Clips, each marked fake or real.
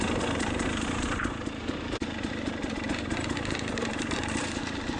fake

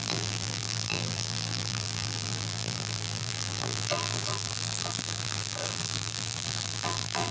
fake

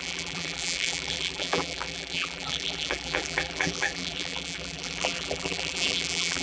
fake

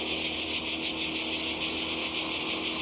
real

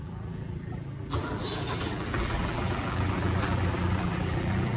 fake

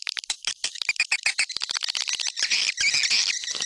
real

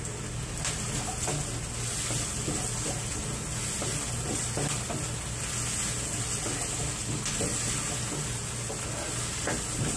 real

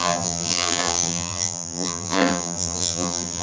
fake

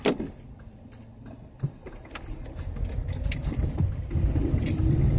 fake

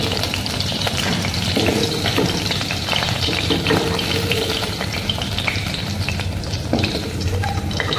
fake